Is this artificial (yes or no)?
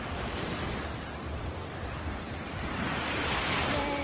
no